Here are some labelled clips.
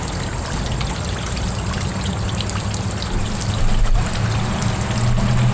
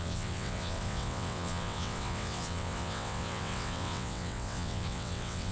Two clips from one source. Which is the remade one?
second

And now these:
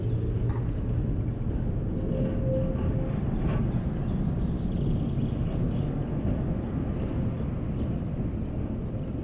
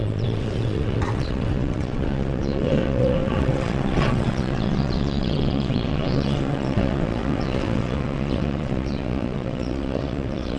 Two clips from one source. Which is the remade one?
second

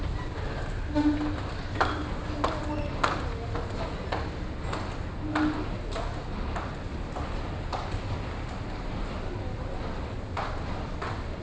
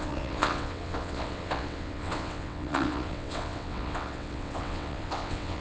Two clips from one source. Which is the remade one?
second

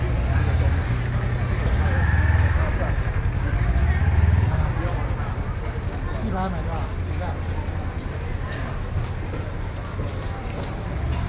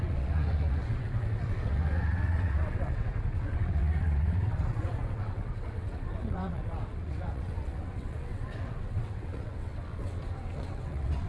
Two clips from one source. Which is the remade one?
second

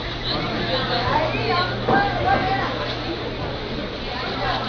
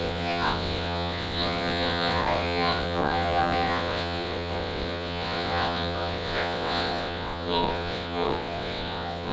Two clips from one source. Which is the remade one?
second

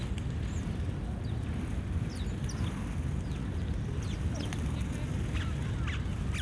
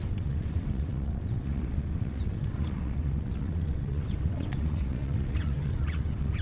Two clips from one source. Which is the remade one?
second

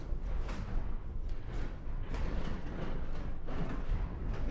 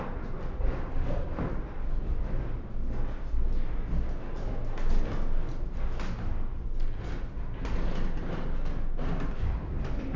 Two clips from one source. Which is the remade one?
first